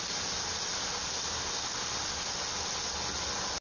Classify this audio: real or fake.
real